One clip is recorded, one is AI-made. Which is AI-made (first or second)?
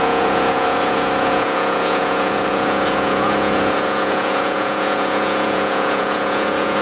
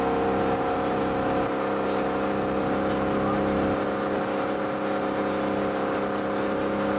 first